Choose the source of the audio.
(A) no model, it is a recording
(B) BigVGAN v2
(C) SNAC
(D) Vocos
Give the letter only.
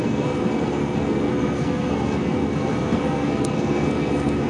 C